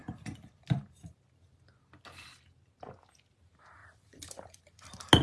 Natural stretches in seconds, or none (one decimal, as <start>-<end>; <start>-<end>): 0.0-3.8; 4.6-5.2